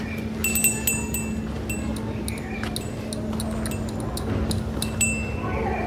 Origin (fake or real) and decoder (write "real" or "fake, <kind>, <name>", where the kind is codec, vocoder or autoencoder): real